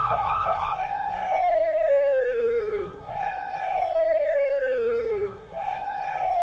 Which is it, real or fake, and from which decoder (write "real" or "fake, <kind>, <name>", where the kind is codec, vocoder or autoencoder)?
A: fake, codec, SNAC